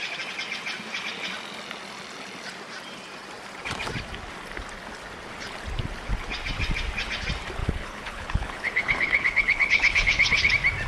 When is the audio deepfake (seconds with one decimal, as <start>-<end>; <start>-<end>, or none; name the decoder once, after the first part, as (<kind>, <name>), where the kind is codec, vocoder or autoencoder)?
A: 7.6-10.5 (codec, HILCodec)